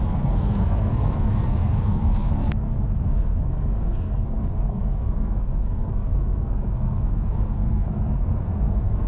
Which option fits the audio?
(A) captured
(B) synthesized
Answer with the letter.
B